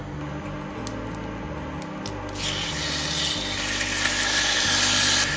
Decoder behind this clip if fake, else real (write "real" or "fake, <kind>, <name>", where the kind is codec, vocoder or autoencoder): real